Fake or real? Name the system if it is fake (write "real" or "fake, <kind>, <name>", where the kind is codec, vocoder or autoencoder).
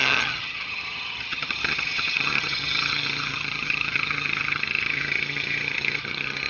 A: fake, vocoder, HiFi-GAN